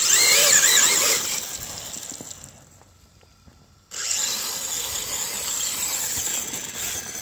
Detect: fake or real real